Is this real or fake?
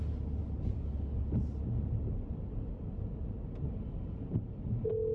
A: real